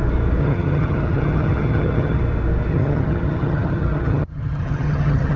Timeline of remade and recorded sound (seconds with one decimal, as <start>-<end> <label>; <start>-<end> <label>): 0.0-0.4 recorded; 0.4-2.2 remade; 2.2-2.7 recorded; 2.7-5.4 remade